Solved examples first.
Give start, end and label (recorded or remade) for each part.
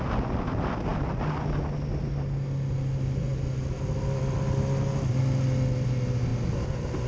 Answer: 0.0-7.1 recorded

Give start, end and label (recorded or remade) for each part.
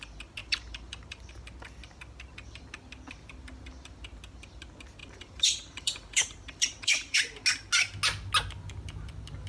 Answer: 0.0-0.4 recorded; 0.4-1.3 remade; 1.3-5.0 recorded; 5.0-7.2 remade; 7.2-9.5 recorded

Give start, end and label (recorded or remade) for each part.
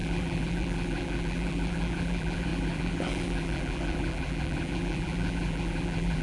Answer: 0.0-6.2 remade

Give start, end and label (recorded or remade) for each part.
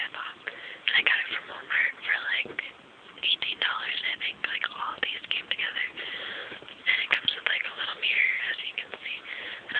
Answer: 0.0-5.7 recorded; 5.7-8.0 remade; 8.0-9.8 recorded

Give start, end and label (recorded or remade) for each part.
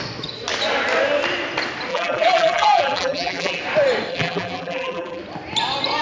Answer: 0.0-1.9 recorded; 1.9-3.6 remade; 3.6-4.1 recorded; 4.1-5.2 remade; 5.2-6.0 recorded